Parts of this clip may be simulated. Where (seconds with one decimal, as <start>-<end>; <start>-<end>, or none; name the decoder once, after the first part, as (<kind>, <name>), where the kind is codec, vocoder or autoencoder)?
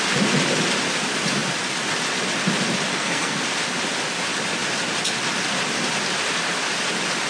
2.9-3.4 (codec, SNAC)